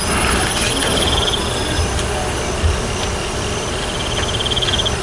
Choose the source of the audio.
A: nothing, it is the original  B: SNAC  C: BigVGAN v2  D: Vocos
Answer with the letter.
A